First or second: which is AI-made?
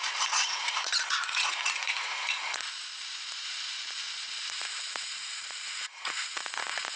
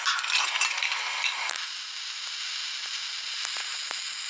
first